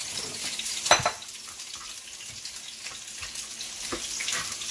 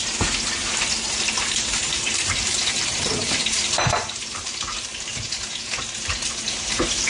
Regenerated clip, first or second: second